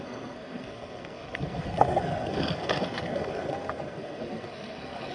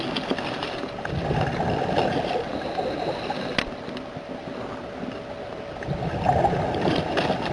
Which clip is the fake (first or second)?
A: first